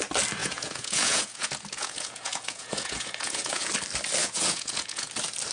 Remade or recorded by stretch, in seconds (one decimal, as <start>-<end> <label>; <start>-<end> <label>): 0.0-0.4 recorded; 0.4-3.7 remade; 3.7-4.2 recorded; 4.2-5.1 remade; 5.1-5.5 recorded